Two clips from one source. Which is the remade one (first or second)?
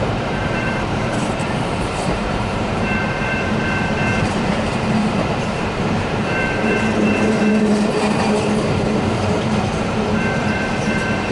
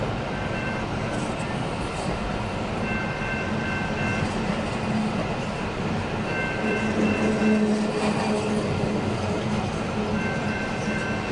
first